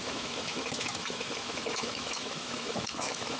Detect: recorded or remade remade